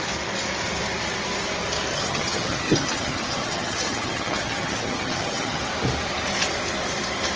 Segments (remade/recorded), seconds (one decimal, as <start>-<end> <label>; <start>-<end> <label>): 0.0-1.9 recorded; 1.9-5.6 remade; 5.6-7.4 recorded